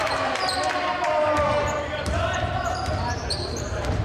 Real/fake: fake